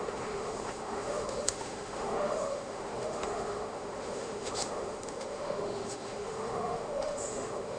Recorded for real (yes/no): no